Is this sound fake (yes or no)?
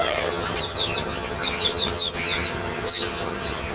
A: yes